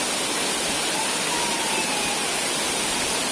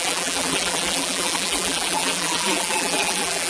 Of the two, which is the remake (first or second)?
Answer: second